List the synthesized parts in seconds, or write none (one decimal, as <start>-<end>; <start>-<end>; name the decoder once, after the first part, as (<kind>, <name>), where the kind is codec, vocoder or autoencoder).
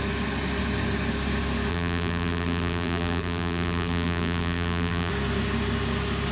1.7-5.1 (vocoder, BigVGAN v2)